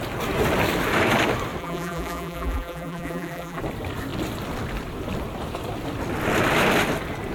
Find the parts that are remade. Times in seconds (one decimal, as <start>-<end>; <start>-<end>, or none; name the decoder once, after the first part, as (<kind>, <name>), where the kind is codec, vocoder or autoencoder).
1.6-3.6 (vocoder, BigVGAN v2)

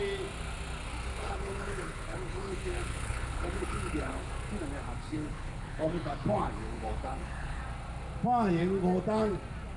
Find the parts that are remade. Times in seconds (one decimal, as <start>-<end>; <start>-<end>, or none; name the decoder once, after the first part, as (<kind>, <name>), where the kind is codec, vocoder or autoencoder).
1.1-4.3 (codec, HILCodec); 5.1-7.6

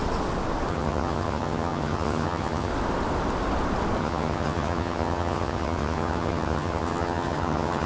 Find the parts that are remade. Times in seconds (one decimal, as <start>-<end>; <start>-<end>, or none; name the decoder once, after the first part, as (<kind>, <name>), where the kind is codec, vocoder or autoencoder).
0.7-2.7 (vocoder, HiFi-GAN); 4.0-7.9